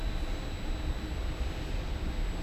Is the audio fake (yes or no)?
no